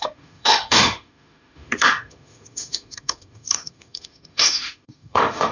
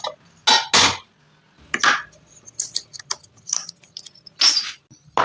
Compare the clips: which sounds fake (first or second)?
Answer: first